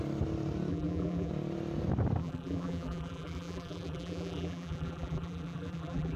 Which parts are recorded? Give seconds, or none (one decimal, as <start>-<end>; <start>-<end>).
0.0-0.7; 1.3-2.2